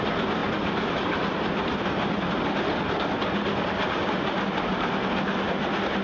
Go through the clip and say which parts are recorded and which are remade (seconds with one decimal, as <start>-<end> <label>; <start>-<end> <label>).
0.0-0.4 recorded; 0.4-1.8 remade; 1.8-6.0 recorded